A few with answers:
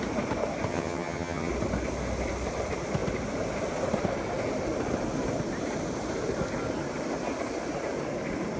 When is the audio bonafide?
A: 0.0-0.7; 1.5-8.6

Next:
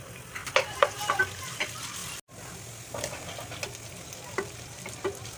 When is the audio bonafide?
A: 0.0-5.4

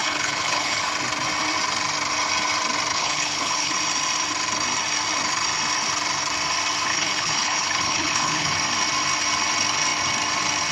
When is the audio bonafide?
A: 0.9-2.9; 3.7-6.9; 8.5-10.7

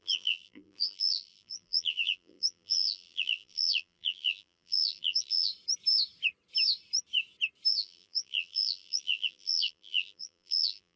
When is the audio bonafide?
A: 5.5-7.8

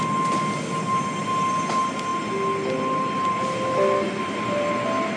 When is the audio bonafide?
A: 0.0-5.2

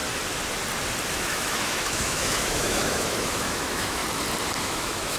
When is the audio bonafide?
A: 0.0-1.1; 4.0-4.6